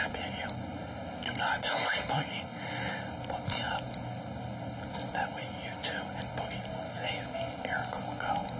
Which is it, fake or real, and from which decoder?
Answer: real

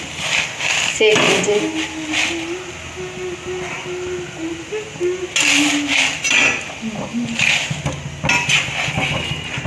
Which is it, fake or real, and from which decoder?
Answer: real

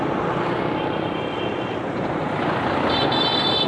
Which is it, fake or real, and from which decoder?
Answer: fake, vocoder, BigVGAN v2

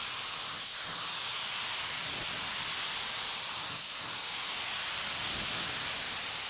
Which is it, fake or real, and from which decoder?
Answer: real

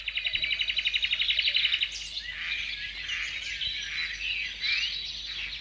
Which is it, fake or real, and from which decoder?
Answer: real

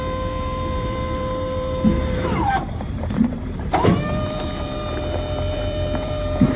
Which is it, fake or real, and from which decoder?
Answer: fake, vocoder, BigVGAN v2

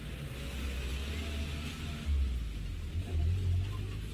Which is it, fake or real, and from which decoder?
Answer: real